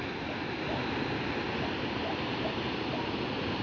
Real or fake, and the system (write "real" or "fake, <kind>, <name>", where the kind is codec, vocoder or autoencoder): real